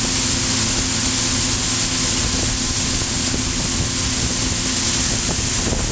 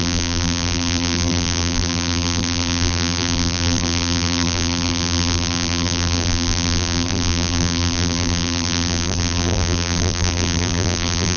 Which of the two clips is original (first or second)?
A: first